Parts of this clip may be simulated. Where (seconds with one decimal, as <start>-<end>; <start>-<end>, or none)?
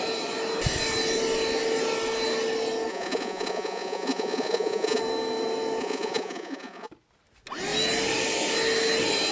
2.9-5.0; 5.8-6.9